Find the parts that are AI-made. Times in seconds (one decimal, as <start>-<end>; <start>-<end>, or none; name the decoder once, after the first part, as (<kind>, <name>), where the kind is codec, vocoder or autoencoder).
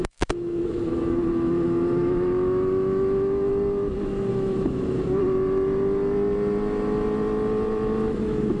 0.0-3.5 (autoencoder, DAC-VAE); 4.3-5.2; 8.1-8.6